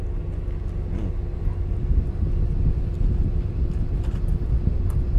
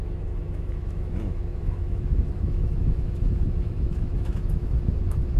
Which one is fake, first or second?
second